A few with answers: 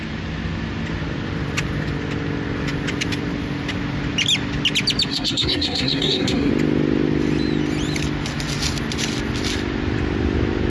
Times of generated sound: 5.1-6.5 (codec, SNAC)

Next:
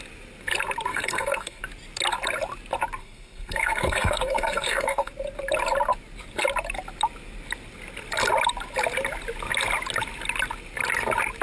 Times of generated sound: 0.9-1.6 (codec, SNAC); 3.0-5.1

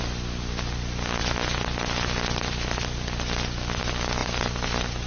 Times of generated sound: 4.2-5.1 (vocoder, BigVGAN v2)

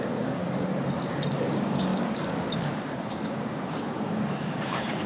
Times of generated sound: 0.0-0.4 (codec, DAC); 1.3-5.1